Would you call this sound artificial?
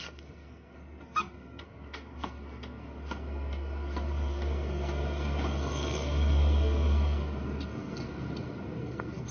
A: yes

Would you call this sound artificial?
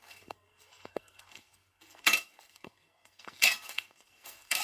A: yes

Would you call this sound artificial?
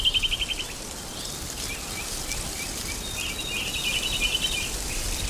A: no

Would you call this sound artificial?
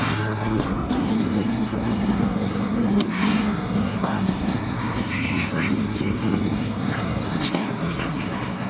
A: yes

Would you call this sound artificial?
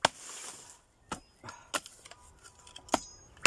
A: no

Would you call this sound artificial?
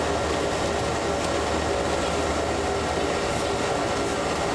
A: no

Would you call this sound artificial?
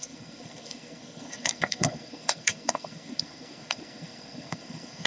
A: yes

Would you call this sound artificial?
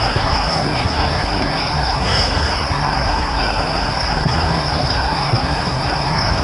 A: yes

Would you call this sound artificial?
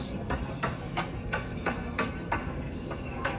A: yes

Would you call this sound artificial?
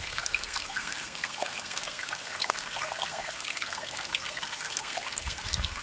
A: yes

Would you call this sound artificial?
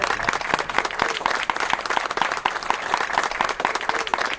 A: no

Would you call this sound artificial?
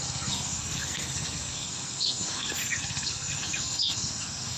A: yes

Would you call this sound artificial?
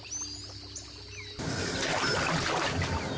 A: no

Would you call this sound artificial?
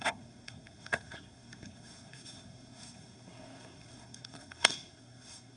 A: yes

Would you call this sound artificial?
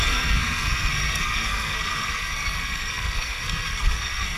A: yes